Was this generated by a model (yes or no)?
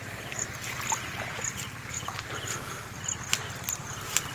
no